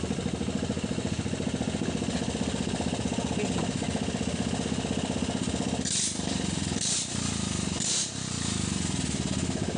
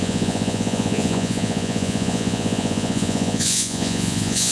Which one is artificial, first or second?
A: second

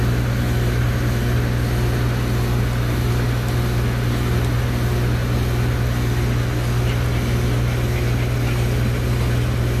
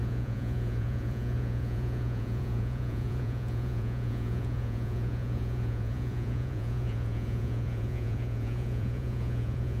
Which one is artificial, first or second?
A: second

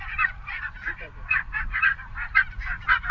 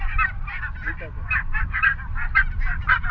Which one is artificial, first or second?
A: first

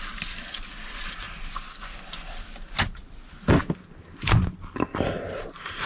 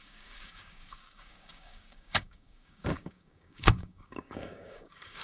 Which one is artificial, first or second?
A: second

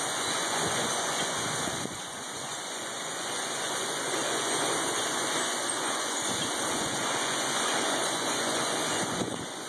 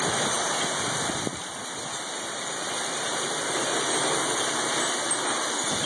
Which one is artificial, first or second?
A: first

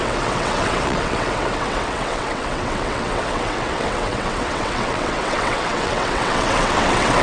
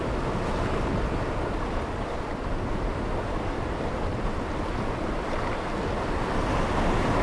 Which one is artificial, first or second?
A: first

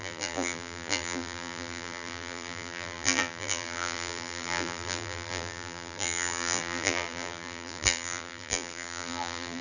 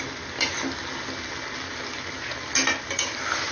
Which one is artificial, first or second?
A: first